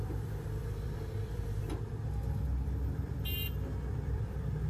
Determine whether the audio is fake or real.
fake